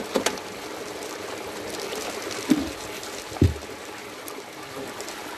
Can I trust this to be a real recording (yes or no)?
yes